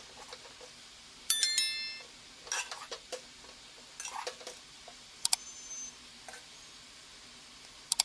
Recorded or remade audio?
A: recorded